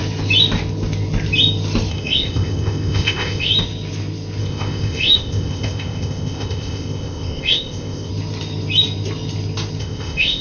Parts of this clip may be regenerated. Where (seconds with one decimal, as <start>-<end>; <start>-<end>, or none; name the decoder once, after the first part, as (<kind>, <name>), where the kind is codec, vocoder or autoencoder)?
1.9-3.5 (codec, ZipCodec); 4.4-8.1; 9.8-10.4